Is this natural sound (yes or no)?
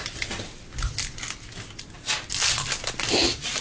yes